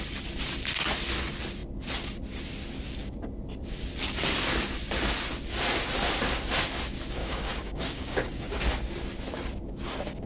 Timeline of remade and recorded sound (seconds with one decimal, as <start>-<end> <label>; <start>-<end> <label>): 0.0-7.2 recorded; 7.2-8.6 remade; 8.6-10.3 recorded